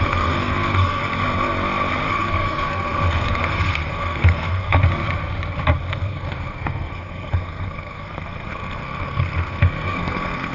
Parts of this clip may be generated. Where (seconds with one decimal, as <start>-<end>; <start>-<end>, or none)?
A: 0.0-1.0; 2.1-4.8; 5.9-10.5